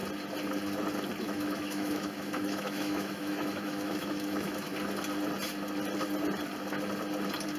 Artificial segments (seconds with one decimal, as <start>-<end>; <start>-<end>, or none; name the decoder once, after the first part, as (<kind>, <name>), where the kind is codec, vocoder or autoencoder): 1.2-4.7 (autoencoder, DAC-VAE)

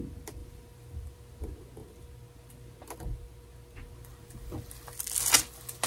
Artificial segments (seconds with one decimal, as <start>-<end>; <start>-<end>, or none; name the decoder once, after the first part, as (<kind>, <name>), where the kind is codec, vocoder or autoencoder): 0.4-1.2 (vocoder, BigVGAN v2)

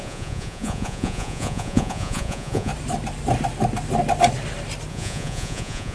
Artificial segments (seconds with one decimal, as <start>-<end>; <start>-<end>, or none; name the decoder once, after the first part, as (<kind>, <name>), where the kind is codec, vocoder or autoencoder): 0.0-2.7 (vocoder, Vocos); 4.9-5.9

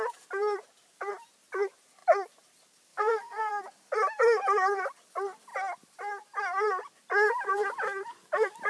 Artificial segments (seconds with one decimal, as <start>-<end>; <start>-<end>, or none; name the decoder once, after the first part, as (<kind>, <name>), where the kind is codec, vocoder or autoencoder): 2.9-3.5 (codec, SNAC)

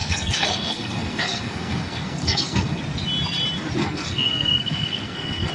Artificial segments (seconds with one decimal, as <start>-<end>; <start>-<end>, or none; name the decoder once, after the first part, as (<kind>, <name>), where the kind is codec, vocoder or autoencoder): 0.0-2.8 (codec, SNAC); 3.8-5.5

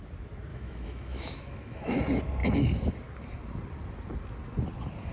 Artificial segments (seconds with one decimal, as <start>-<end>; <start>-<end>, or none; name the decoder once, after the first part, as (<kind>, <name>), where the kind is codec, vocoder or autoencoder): 0.5-2.0 (autoencoder, DAC-VAE)

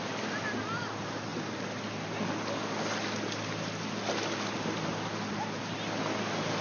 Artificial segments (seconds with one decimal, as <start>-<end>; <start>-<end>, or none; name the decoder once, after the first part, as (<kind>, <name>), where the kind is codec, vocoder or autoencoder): none